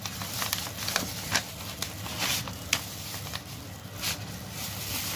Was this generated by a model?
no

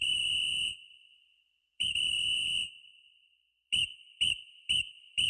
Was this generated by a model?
yes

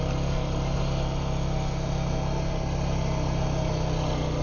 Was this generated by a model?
no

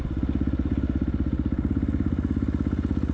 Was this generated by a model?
no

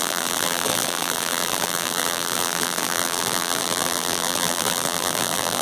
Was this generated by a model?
yes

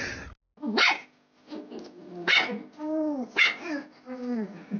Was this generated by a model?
no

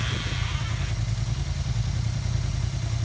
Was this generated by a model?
no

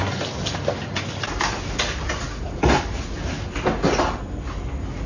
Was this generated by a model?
no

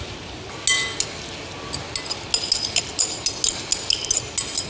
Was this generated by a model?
no